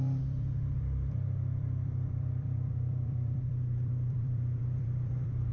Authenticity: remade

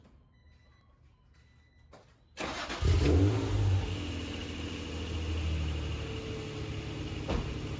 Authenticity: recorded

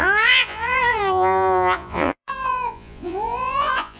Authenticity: remade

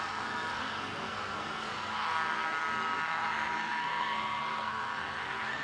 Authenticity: remade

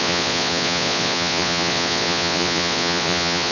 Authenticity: remade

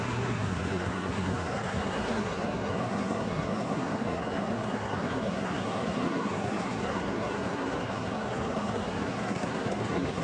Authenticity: remade